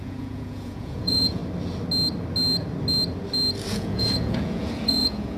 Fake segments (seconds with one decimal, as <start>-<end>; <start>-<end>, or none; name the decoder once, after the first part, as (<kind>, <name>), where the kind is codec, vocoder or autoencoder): 0.0-1.4 (vocoder, Vocos); 3.7-5.4